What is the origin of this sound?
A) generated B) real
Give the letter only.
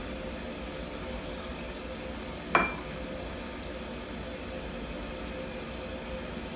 B